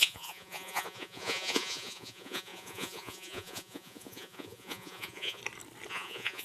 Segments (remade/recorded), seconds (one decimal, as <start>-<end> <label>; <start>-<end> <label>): 0.0-5.4 remade; 5.4-5.9 recorded; 5.9-6.4 remade